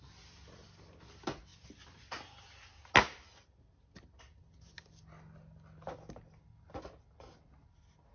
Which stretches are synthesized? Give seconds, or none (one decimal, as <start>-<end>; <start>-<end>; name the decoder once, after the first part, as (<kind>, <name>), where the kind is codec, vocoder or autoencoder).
none